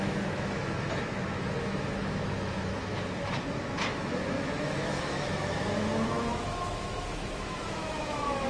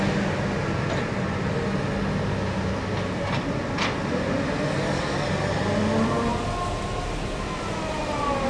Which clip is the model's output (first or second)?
first